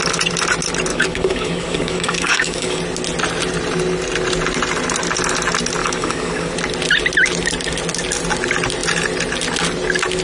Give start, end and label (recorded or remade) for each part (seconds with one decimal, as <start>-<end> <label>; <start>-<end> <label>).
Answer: 0.0-0.9 recorded; 0.9-2.8 remade; 2.8-5.8 recorded; 5.8-6.5 remade; 6.5-10.2 recorded